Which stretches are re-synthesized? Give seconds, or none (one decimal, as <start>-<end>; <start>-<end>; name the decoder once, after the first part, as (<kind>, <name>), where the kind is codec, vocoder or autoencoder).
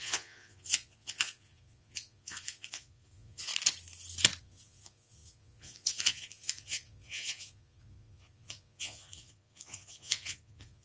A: 0.0-3.5 (vocoder, Vocos); 4.4-10.8